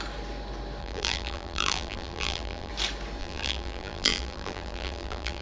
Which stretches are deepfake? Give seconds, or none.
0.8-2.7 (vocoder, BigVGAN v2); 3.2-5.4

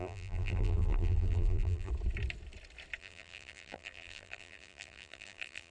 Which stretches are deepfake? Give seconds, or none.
0.0-1.9 (vocoder, BigVGAN v2); 3.0-5.7

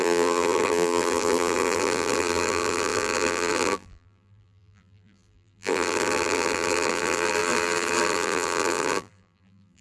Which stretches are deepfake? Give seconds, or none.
0.0-9.8 (vocoder, BigVGAN v2)

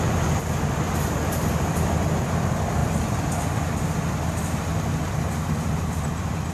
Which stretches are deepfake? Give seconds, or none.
4.7-6.1 (vocoder, BigVGAN v2)

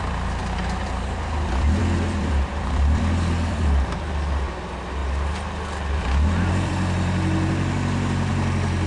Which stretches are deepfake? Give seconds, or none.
0.0-5.0 (vocoder, BigVGAN v2); 6.5-8.9

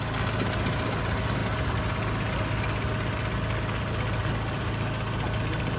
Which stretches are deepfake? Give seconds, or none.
none

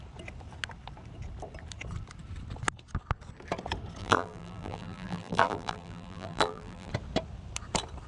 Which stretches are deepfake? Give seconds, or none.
4.0-6.9 (vocoder, BigVGAN v2)